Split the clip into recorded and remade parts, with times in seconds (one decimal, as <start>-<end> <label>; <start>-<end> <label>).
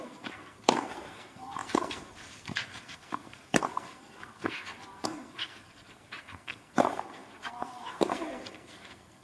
0.0-9.2 remade